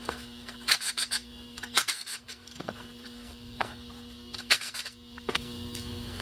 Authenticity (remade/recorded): remade